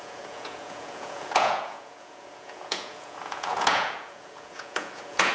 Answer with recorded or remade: remade